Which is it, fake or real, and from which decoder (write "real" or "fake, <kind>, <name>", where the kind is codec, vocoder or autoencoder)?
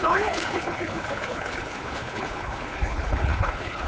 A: fake, codec, HILCodec